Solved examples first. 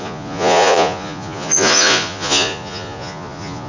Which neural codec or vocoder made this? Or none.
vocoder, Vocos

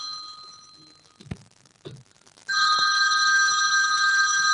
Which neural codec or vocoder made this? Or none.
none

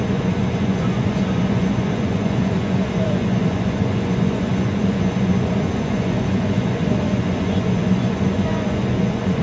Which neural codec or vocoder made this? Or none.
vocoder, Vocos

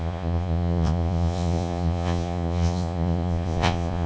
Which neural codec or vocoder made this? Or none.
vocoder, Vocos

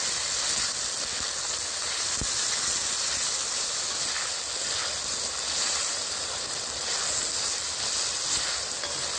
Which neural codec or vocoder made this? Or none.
none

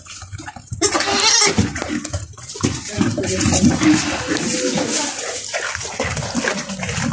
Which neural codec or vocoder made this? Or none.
none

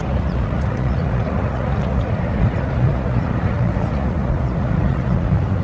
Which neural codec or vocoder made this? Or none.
vocoder, Vocos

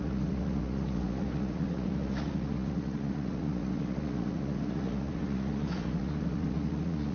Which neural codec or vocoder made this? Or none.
vocoder, Vocos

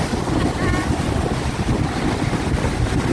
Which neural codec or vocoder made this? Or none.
none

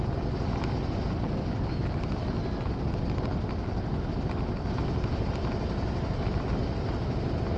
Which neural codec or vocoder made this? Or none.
none